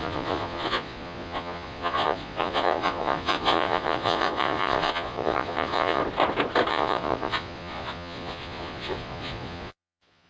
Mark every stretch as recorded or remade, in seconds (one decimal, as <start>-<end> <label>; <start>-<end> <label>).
0.0-6.0 remade; 6.0-6.7 recorded; 6.7-10.3 remade